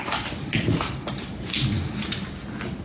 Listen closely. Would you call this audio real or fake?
real